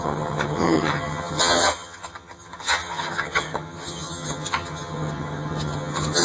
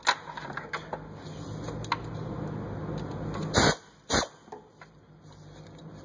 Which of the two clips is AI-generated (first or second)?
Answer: first